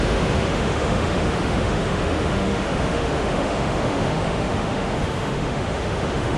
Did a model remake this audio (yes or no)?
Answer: yes